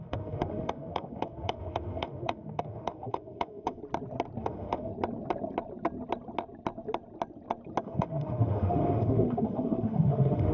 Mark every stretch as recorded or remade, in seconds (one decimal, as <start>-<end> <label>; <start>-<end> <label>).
0.0-3.8 remade; 3.8-4.4 recorded; 4.4-4.9 remade; 4.9-7.8 recorded; 7.8-10.5 remade